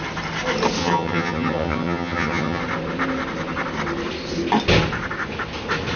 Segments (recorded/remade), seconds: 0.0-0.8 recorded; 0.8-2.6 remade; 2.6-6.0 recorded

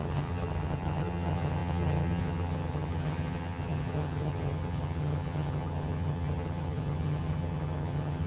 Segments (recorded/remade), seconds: 0.0-8.3 remade